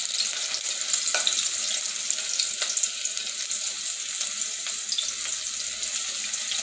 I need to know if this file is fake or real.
real